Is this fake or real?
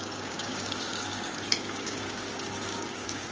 fake